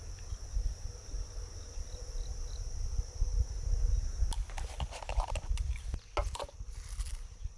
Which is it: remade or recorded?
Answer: recorded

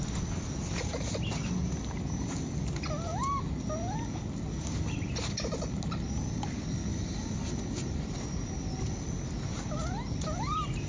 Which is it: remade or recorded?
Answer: recorded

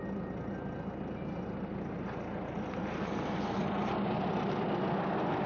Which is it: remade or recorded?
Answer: recorded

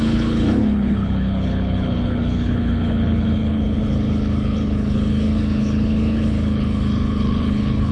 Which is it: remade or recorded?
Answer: remade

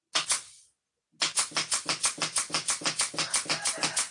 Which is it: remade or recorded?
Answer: recorded